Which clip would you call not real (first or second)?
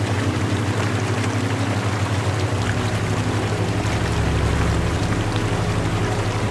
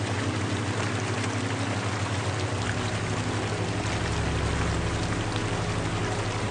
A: first